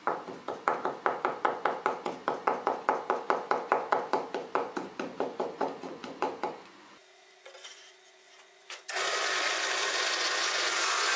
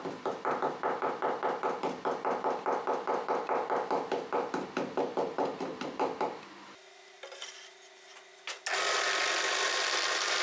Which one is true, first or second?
second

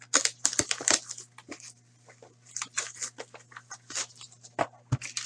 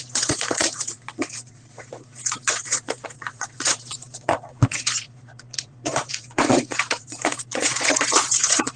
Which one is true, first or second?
first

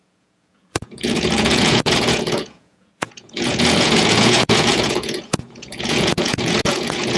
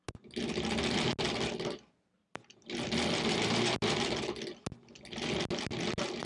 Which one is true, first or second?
second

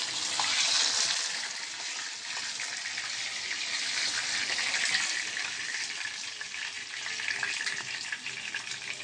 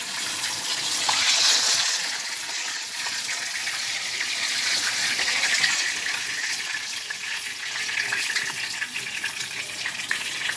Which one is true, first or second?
first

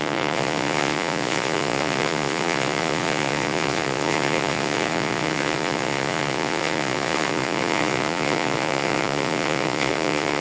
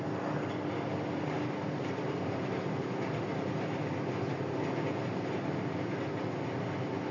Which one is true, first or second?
second